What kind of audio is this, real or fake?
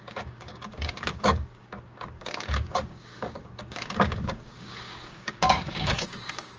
fake